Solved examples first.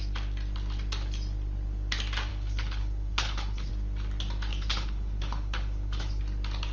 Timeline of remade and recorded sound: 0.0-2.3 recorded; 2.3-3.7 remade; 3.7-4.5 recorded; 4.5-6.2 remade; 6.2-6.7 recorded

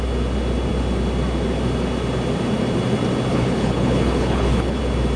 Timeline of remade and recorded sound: 0.0-3.3 recorded; 3.3-4.8 remade; 4.8-5.2 recorded

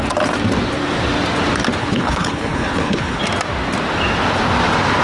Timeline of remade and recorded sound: 0.0-1.8 recorded; 1.8-3.2 remade; 3.2-5.0 recorded

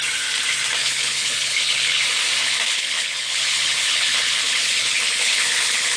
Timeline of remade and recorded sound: 0.0-0.8 recorded; 0.8-2.0 remade; 2.0-2.4 recorded; 2.4-6.0 remade

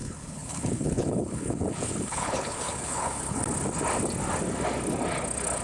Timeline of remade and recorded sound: 0.0-3.4 remade; 3.4-5.6 recorded

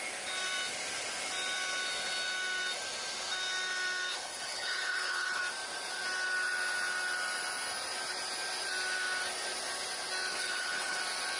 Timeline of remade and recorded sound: 0.0-4.1 recorded; 4.1-5.4 remade; 5.4-10.3 recorded; 10.3-11.0 remade; 11.0-11.4 recorded